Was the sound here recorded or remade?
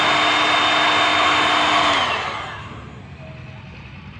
recorded